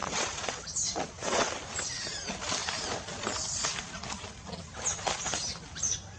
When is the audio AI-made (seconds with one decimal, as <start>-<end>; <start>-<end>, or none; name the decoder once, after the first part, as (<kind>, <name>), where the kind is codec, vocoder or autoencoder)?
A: 0.0-1.5 (vocoder, WaveNeXt)